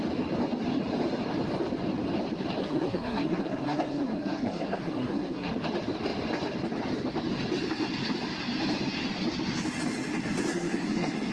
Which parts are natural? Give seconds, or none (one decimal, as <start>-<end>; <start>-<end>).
0.0-2.6; 5.5-10.5